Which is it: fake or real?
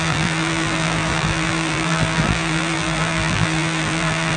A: fake